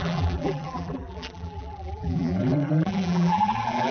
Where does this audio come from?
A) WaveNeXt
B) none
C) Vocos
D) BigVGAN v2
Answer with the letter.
D